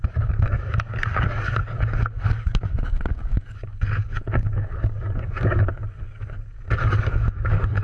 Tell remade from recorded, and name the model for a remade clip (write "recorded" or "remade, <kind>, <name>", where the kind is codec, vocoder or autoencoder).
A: remade, codec, DAC